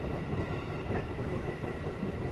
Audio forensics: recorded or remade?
remade